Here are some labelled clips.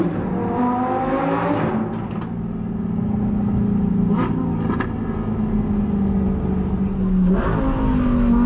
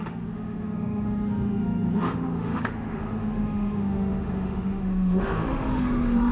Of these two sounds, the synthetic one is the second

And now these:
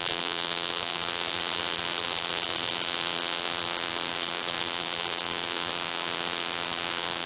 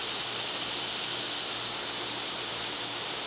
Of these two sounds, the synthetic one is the first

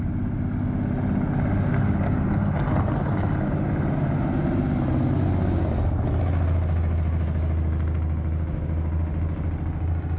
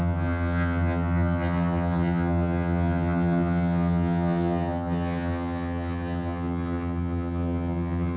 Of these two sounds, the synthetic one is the second